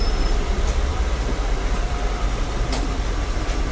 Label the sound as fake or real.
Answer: fake